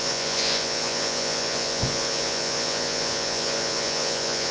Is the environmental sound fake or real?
fake